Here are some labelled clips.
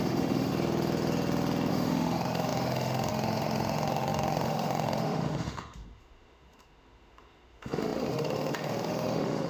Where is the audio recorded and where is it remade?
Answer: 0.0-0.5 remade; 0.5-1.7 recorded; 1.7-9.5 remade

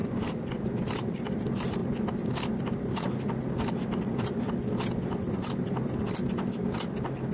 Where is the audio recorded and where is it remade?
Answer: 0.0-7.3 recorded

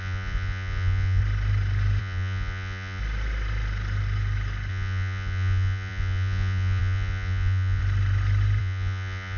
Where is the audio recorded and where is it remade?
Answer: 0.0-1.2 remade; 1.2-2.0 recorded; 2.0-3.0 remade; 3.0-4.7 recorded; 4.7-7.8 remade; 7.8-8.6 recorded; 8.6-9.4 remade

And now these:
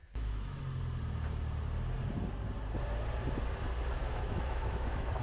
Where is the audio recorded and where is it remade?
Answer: 0.0-0.6 remade; 0.6-4.0 recorded; 4.0-5.2 remade

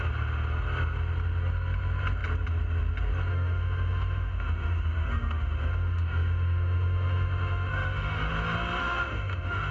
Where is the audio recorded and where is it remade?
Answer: 0.0-3.3 recorded; 3.3-8.3 remade; 8.3-8.8 recorded; 8.8-9.7 remade

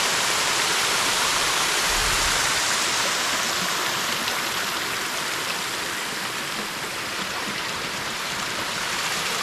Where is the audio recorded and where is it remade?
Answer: 0.0-2.0 remade; 2.0-6.9 recorded; 6.9-9.4 remade

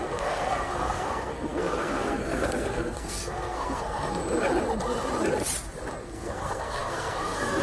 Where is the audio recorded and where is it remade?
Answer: 0.0-4.2 remade; 4.2-6.0 recorded; 6.0-7.6 remade